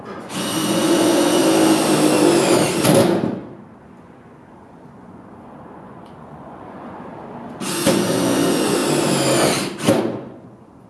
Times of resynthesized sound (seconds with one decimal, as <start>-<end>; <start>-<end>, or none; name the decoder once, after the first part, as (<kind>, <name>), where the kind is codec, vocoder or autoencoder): 0.0-1.4 (vocoder, Vocos); 3.8-7.1; 7.7-8.8; 10.0-10.9